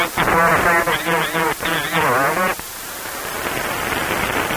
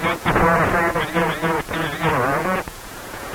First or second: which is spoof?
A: second